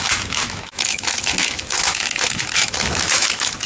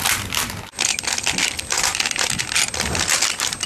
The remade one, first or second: first